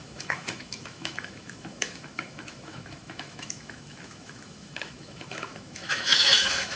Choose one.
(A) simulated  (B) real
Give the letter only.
A